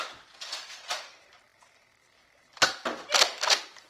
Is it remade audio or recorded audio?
recorded